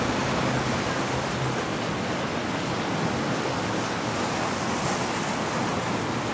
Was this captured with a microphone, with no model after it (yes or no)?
yes